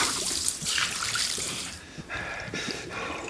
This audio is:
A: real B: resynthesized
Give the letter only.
B